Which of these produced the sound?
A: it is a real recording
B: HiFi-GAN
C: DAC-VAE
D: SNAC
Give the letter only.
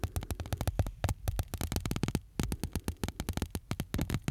A